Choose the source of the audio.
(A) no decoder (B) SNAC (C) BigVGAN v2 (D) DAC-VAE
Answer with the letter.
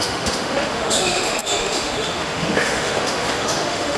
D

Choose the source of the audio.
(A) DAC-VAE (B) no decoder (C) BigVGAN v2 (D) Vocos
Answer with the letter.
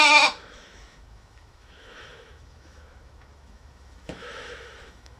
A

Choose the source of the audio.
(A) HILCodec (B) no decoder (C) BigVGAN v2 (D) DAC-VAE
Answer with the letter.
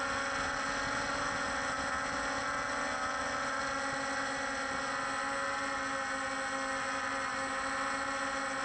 B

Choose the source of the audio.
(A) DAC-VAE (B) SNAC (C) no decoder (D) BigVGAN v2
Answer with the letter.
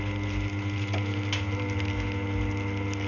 C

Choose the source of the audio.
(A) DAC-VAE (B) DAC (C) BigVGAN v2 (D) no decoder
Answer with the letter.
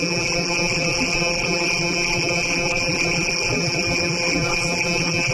C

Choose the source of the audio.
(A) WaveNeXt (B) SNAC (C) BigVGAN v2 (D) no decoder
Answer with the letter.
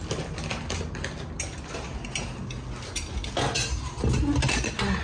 D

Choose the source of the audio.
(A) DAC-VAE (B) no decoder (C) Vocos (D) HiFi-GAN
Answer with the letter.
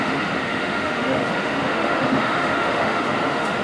A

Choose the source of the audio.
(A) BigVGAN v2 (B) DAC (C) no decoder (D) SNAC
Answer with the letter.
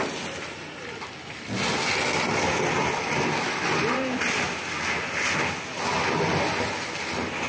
C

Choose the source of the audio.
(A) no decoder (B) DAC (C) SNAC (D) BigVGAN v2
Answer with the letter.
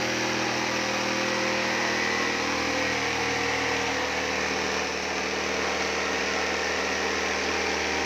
A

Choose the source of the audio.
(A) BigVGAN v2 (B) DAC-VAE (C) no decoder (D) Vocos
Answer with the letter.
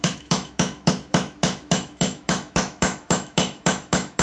B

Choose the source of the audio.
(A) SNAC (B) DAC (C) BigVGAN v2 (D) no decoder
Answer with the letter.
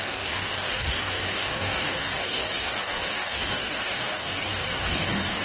B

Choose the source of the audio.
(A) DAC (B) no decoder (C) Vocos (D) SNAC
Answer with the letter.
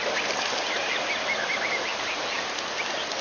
B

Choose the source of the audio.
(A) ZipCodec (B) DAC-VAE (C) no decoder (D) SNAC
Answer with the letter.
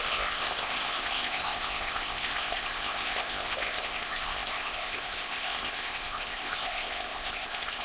A